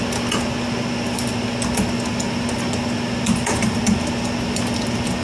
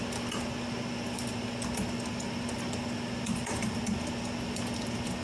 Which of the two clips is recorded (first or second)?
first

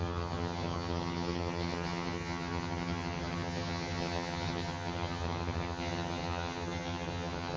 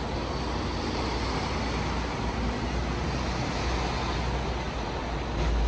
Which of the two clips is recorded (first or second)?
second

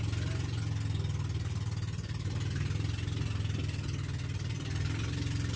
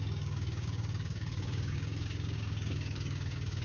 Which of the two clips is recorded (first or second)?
first